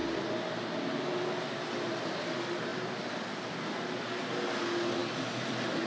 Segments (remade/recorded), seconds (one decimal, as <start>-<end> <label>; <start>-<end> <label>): 0.0-5.9 recorded